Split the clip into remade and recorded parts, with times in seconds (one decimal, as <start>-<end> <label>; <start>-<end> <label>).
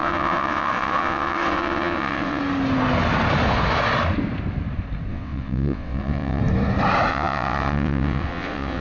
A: 0.0-2.4 remade; 2.4-5.1 recorded; 5.1-6.4 remade; 6.4-7.1 recorded; 7.1-8.8 remade